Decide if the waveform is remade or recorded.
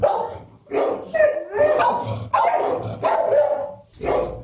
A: recorded